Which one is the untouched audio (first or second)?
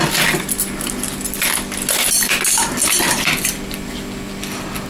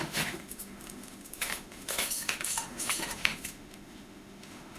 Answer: first